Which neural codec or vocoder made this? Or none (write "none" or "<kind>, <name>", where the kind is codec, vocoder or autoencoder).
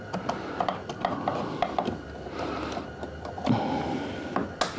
none